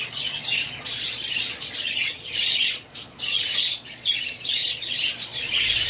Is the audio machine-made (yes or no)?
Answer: yes